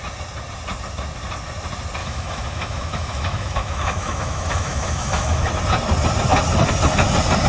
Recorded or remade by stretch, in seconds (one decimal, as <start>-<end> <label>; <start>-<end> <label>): 0.0-2.0 recorded; 2.0-5.5 remade; 5.5-7.5 recorded